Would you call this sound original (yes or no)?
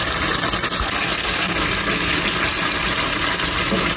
yes